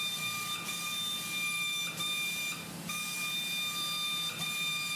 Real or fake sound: fake